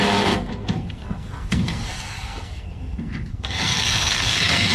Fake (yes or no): yes